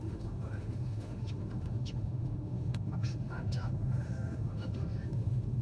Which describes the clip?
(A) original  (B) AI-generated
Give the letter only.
B